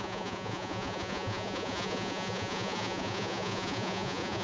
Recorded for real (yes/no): no